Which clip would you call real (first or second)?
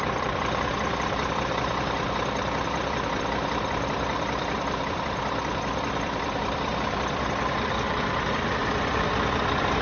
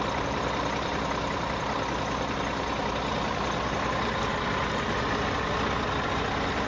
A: second